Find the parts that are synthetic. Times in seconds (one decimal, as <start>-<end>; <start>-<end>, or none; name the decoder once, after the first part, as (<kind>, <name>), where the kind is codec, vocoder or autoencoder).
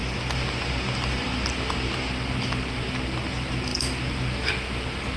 none